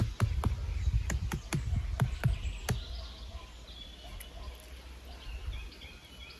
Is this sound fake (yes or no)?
no